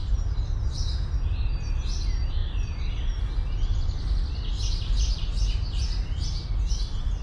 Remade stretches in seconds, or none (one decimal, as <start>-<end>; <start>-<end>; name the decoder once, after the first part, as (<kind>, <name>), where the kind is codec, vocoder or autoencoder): none